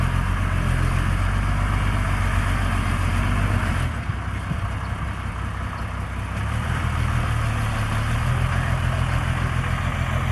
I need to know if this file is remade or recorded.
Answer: recorded